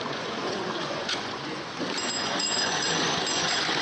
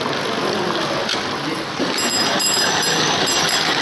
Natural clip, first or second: second